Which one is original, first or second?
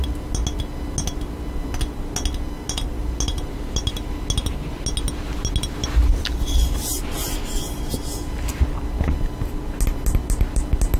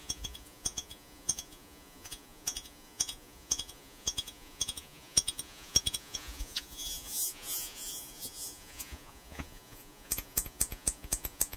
first